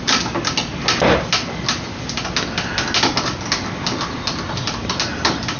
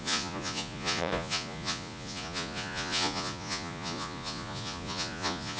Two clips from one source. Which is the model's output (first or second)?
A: second